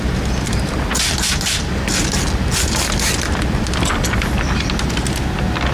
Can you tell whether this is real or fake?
real